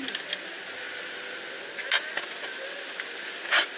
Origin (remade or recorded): recorded